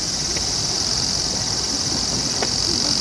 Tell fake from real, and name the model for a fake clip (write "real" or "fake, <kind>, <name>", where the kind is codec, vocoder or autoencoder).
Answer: real